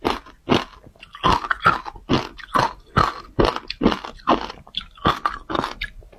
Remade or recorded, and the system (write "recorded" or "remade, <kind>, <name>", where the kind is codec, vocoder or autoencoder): recorded